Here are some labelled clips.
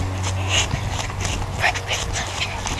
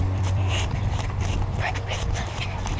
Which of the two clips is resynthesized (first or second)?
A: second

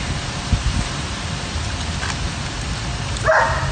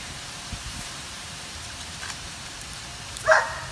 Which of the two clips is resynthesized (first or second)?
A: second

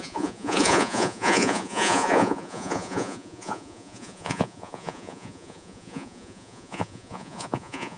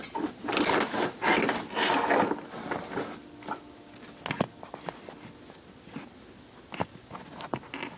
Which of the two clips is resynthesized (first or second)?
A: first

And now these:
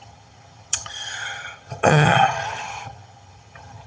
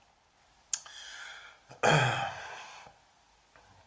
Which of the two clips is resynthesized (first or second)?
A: first